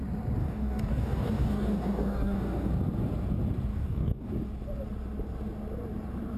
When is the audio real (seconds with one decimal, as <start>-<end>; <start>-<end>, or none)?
0.0-0.4; 2.7-3.7; 4.3-6.4